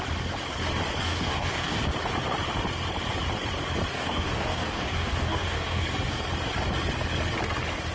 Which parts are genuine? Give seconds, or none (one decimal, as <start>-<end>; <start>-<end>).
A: 0.0-1.0; 1.8-3.9; 5.8-7.9